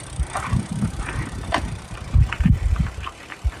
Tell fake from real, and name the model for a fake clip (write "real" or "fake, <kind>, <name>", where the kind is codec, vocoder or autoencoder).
fake, vocoder, BigVGAN v2